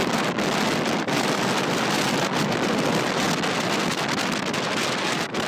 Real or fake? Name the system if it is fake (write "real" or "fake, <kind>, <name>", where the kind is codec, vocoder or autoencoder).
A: real